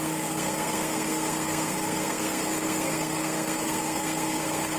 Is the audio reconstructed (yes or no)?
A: yes